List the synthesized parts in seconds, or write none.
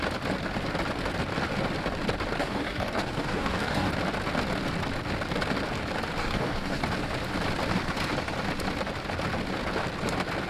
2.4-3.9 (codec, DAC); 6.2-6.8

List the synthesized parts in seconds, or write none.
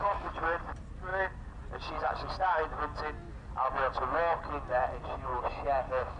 0.0-1.1 (vocoder, BigVGAN v2); 4.8-5.3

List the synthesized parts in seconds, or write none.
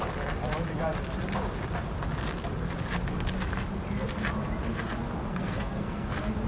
5.3-6.1 (codec, SNAC)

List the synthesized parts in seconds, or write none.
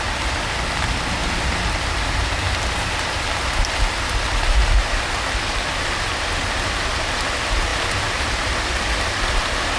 1.2-2.1 (vocoder, BigVGAN v2); 7.7-9.4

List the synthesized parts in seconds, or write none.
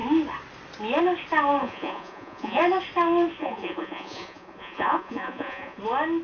1.6-2.6 (vocoder, Vocos); 3.4-5.8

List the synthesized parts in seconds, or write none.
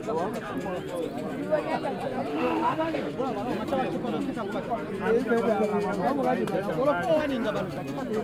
2.3-3.1 (autoencoder, DAC-VAE)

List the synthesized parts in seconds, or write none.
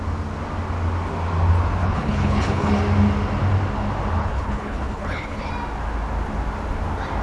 1.8-2.7 (codec, HILCodec); 4.2-5.5